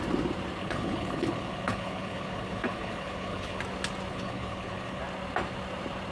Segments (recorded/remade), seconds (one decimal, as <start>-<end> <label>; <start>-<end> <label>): 0.0-0.6 recorded; 0.6-3.6 remade; 3.6-4.1 recorded; 4.1-5.0 remade; 5.0-6.1 recorded